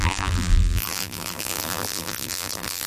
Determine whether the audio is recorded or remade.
remade